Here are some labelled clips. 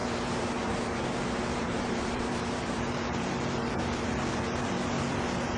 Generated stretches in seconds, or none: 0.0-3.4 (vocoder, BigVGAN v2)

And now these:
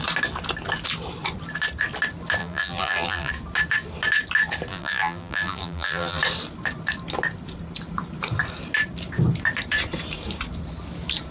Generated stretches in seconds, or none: 2.4-3.3 (vocoder, BigVGAN v2); 4.7-6.2

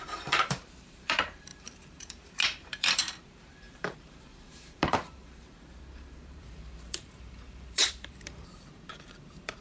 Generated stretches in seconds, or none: 0.0-9.6 (vocoder, BigVGAN v2)

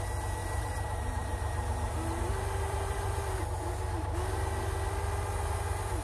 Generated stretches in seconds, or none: 0.4-3.2 (vocoder, BigVGAN v2)

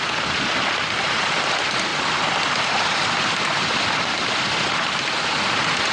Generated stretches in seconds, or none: none